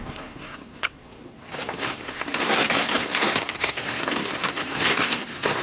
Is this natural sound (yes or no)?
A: no